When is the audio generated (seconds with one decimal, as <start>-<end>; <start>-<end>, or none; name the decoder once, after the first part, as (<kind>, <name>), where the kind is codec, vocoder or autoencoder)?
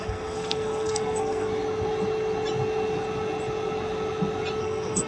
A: 0.0-1.5 (codec, SNAC); 4.6-5.1